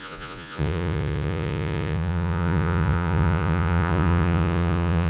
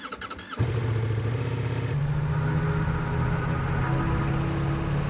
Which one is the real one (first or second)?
second